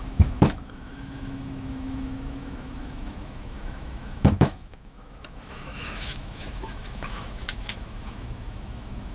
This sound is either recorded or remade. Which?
remade